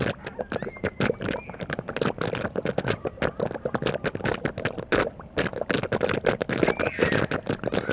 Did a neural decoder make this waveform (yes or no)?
no